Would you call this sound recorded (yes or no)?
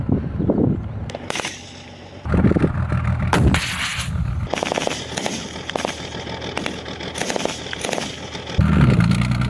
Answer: yes